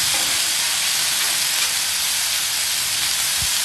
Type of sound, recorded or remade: recorded